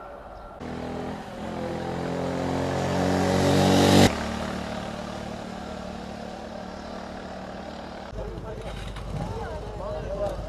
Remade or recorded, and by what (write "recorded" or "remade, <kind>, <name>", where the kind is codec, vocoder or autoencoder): recorded